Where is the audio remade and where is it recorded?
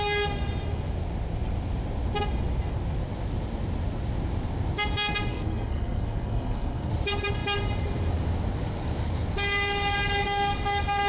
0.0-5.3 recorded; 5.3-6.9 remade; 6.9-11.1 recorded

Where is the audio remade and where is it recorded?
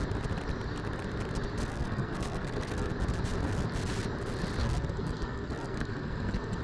0.0-1.7 recorded; 1.7-2.9 remade; 2.9-4.6 recorded; 4.6-6.6 remade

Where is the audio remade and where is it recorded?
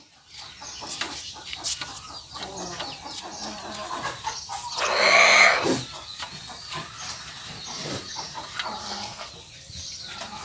0.0-8.8 recorded; 8.8-9.3 remade; 9.3-10.4 recorded